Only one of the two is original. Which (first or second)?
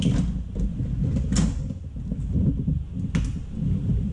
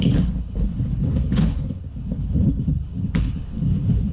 first